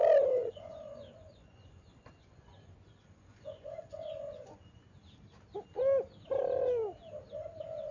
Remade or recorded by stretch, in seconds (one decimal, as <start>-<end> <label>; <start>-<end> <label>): 0.0-0.4 recorded; 0.4-5.0 remade; 5.0-7.9 recorded